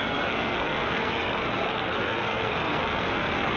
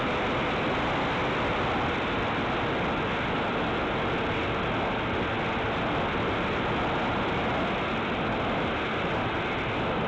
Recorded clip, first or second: second